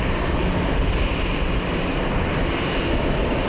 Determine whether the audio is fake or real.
real